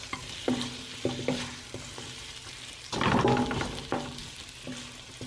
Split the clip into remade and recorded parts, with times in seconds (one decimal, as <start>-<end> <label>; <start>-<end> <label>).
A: 0.0-5.3 recorded